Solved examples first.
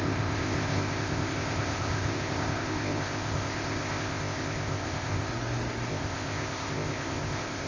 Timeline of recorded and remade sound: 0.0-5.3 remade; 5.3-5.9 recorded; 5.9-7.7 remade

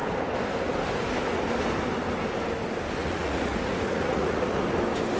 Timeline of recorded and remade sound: 0.0-3.0 recorded; 3.0-4.6 remade; 4.6-5.2 recorded

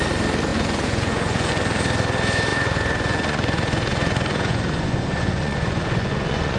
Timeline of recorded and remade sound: 0.0-0.5 recorded; 0.5-1.5 remade; 1.5-2.5 recorded; 2.5-6.6 remade

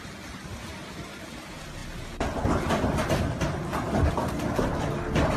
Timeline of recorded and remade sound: 0.0-5.4 recorded